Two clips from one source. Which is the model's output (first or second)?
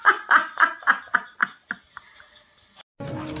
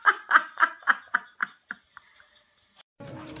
second